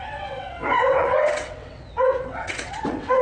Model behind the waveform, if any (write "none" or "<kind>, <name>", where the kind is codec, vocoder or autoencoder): vocoder, WaveNeXt